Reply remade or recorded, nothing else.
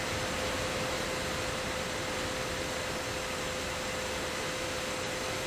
recorded